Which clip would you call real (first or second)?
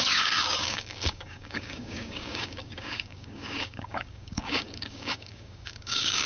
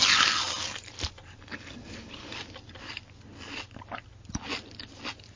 second